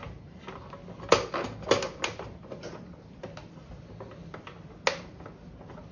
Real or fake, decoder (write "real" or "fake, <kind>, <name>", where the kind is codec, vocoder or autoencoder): real